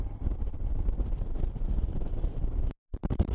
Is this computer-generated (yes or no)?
yes